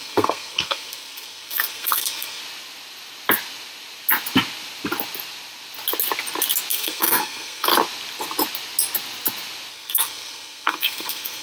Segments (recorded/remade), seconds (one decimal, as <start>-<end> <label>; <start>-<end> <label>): 0.0-2.4 remade; 2.4-6.7 recorded; 6.7-7.7 remade; 7.7-9.7 recorded; 9.7-11.4 remade